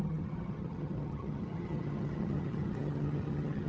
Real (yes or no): no